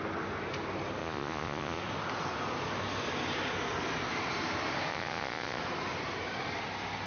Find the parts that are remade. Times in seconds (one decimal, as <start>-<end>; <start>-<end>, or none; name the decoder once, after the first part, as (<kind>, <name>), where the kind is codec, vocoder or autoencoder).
1.0-1.8 (vocoder, Vocos); 4.9-5.6